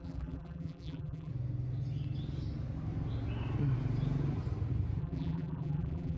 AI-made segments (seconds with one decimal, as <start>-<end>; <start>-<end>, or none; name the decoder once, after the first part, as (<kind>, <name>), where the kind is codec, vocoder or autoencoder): 0.0-1.3 (vocoder, BigVGAN v2); 5.0-6.2